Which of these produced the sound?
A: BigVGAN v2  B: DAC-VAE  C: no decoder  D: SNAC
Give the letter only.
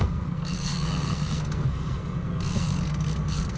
D